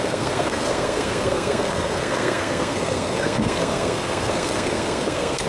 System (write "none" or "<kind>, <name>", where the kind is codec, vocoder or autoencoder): codec, SNAC